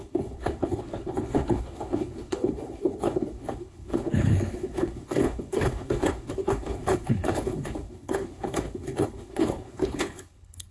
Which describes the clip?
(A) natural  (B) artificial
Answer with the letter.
B